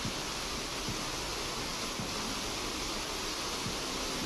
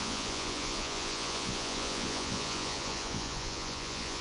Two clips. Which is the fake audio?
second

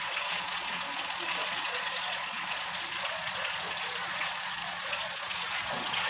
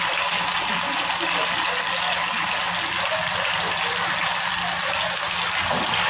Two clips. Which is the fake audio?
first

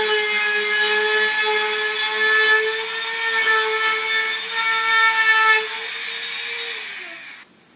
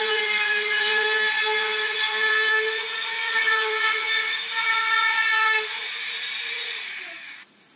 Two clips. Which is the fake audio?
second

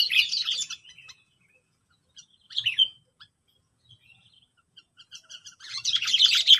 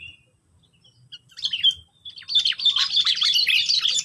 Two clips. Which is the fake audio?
first